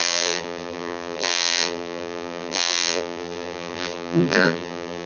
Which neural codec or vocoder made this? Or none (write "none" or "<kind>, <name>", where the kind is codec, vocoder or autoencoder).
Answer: vocoder, BigVGAN v2